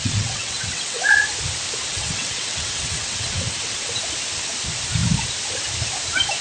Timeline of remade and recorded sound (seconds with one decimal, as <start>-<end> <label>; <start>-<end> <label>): 0.0-1.0 remade; 1.0-1.9 recorded; 1.9-4.0 remade; 4.0-6.4 recorded